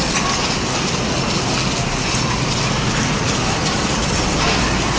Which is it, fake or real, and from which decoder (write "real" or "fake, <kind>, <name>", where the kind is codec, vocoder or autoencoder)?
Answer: real